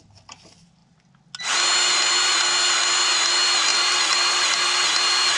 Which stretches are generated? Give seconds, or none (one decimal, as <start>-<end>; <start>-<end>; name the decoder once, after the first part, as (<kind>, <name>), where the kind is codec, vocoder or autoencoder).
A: none